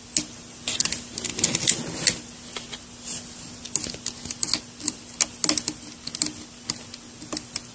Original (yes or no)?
yes